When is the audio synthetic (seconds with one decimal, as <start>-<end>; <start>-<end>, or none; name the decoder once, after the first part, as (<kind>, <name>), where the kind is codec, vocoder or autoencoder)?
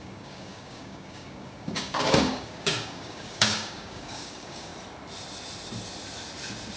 0.0-4.7 (codec, DAC)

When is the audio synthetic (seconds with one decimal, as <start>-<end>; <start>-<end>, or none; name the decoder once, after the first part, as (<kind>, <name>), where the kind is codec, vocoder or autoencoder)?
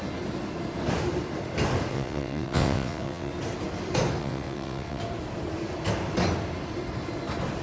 1.9-3.3 (vocoder, WaveNeXt); 4.2-5.0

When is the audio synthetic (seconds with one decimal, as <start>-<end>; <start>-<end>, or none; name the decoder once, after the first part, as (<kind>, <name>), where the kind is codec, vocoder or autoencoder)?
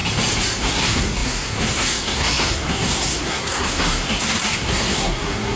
0.6-5.6 (codec, SNAC)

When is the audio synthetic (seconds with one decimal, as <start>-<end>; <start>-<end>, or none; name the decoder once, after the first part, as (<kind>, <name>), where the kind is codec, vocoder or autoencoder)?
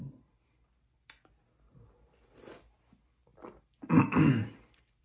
none